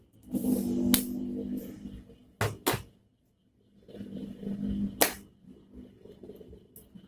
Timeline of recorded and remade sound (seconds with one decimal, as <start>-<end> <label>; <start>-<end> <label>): 0.0-7.1 recorded